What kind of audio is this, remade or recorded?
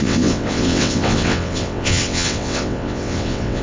remade